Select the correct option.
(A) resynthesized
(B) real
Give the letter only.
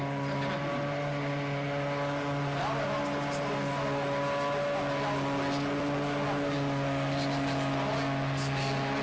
B